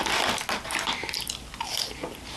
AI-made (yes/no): no